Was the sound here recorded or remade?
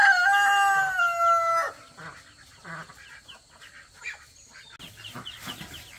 recorded